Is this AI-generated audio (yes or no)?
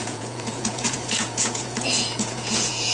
yes